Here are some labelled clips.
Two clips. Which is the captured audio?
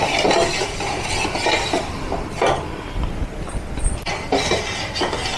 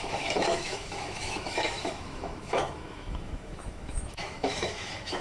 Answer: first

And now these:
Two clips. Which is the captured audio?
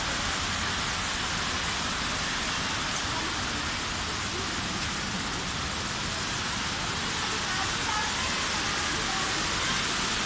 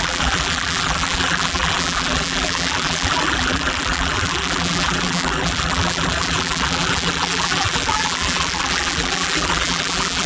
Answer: first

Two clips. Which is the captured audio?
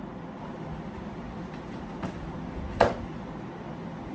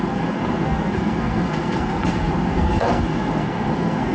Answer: first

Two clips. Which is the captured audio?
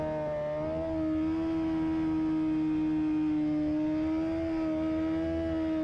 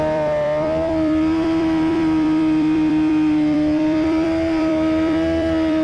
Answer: first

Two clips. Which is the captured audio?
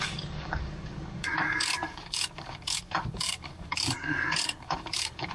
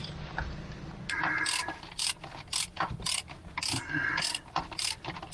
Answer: second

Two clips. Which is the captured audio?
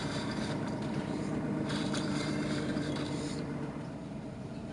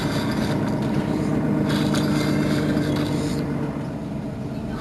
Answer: second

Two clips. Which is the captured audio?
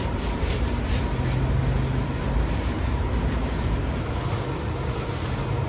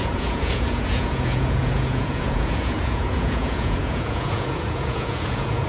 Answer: first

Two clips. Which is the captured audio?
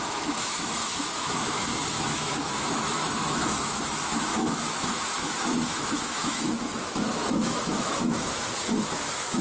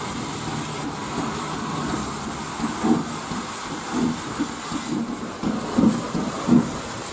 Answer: second